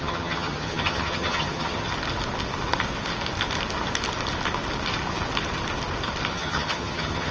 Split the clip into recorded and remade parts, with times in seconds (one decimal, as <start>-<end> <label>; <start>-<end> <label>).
0.0-1.9 remade; 1.9-6.3 recorded; 6.3-7.3 remade